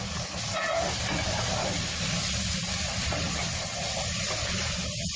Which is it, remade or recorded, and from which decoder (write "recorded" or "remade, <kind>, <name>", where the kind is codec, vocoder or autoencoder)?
recorded